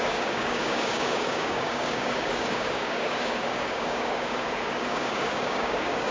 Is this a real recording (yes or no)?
no